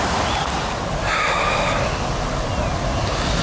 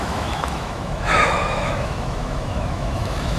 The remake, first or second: second